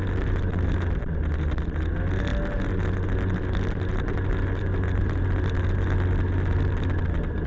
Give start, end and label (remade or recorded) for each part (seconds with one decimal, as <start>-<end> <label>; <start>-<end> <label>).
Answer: 0.0-7.5 recorded